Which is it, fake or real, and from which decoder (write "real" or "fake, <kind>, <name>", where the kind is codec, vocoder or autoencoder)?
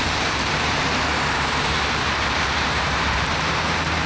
fake, vocoder, BigVGAN v2